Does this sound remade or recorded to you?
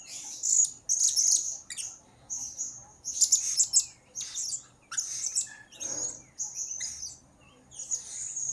recorded